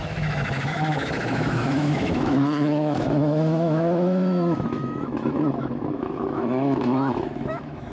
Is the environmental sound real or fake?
fake